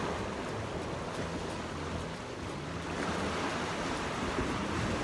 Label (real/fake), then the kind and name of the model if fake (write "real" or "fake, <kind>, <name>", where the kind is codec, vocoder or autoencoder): real